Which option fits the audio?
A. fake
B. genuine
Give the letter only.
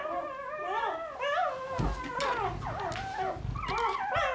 B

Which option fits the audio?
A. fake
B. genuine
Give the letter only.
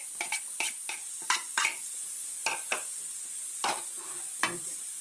B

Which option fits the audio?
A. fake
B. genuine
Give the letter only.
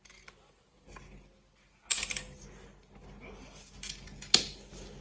B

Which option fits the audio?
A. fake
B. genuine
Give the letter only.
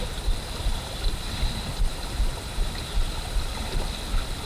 B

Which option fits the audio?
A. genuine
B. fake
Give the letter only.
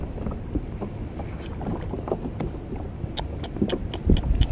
A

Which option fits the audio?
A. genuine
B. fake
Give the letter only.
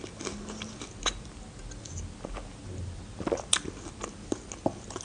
A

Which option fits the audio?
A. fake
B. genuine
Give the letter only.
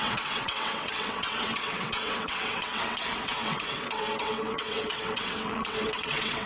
A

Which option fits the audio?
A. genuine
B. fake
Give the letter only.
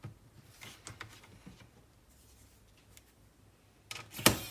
A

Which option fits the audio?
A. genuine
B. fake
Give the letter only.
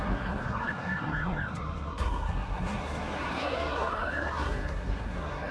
B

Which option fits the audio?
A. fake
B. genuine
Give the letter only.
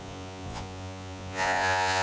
A